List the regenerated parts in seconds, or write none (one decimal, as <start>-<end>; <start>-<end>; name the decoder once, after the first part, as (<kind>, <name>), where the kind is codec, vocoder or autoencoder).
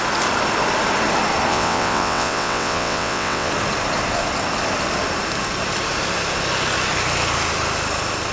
1.5-3.5 (vocoder, WaveNeXt)